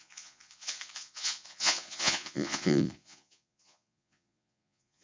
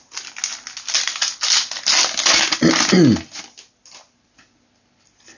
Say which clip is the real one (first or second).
second